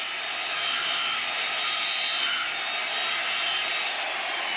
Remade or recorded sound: recorded